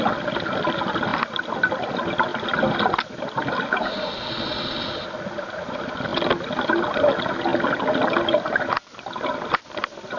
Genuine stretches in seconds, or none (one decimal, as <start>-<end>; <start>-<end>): 0.0-10.2